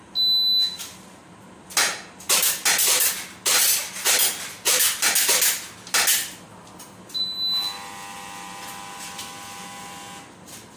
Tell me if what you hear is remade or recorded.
recorded